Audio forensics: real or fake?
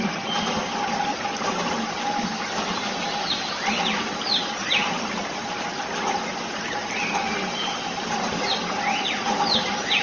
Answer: real